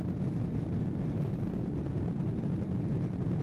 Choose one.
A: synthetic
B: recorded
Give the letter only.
B